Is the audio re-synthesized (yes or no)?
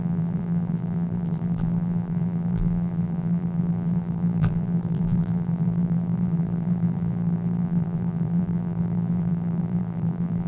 yes